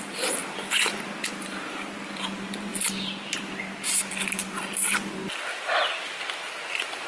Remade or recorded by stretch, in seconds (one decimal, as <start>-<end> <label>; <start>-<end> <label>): 0.0-7.1 recorded